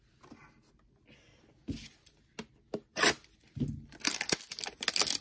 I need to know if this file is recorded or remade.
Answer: recorded